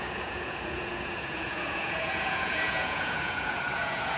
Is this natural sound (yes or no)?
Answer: no